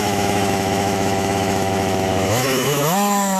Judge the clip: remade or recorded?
remade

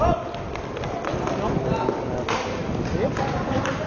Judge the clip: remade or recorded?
recorded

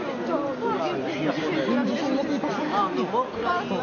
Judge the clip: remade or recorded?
recorded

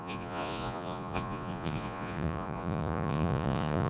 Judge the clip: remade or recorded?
remade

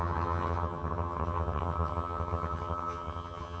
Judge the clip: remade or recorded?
remade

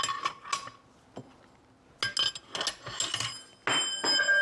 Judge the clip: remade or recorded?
recorded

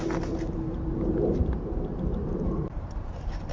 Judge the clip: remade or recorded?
remade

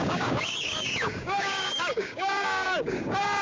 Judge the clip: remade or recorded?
remade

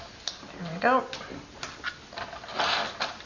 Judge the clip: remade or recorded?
recorded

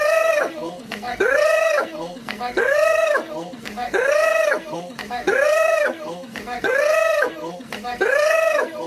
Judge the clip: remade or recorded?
remade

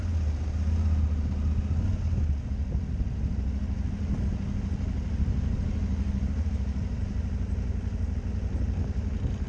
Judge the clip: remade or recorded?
recorded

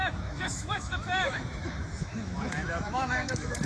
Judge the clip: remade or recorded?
remade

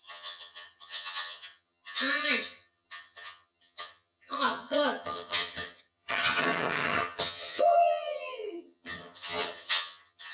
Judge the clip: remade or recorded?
remade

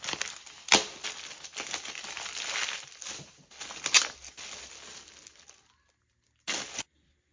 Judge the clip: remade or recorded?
recorded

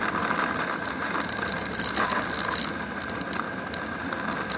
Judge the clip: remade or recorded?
recorded